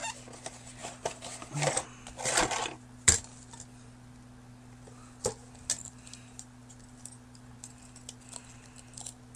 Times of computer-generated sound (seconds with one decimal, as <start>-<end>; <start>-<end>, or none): none